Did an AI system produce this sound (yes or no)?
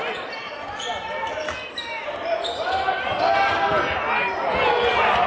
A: no